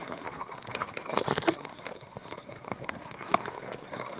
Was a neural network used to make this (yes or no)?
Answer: yes